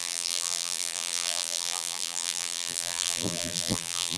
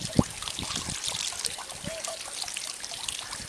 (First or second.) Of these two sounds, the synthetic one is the first